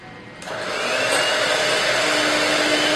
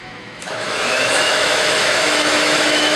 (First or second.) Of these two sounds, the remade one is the second